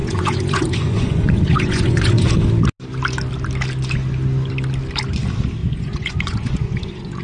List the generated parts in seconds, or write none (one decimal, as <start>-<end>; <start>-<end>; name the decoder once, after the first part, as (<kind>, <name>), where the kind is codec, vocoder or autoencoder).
0.0-2.3 (vocoder, Vocos); 5.6-7.2